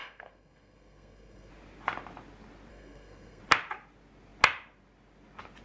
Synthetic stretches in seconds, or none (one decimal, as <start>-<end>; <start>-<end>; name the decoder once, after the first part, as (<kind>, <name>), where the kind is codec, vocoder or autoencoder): 0.0-1.5 (codec, SNAC); 2.7-3.4